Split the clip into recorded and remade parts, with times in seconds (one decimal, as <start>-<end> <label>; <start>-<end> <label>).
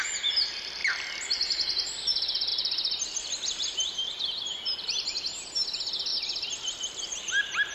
0.0-0.8 recorded; 0.8-2.1 remade; 2.1-2.5 recorded; 2.5-4.8 remade; 4.8-7.7 recorded